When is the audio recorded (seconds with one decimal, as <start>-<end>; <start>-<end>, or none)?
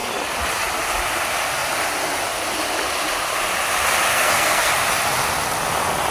0.0-4.1; 4.7-6.1